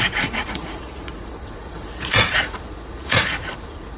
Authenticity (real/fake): fake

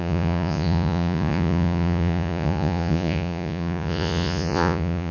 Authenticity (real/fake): fake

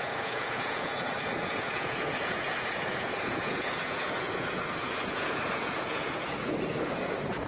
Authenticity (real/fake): fake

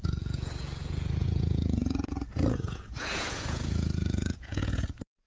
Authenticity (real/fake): fake